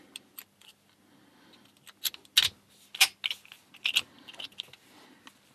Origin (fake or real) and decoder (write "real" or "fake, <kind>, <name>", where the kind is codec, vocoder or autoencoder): real